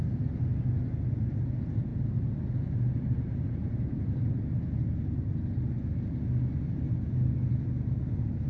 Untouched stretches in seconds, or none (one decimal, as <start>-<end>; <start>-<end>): 0.0-1.9; 4.2-8.5